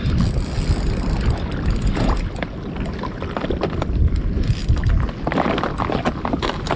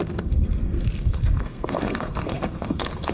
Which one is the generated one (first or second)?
second